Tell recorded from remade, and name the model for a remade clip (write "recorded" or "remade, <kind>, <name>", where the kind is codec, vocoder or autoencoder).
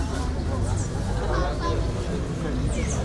recorded